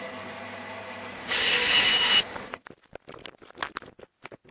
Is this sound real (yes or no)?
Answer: yes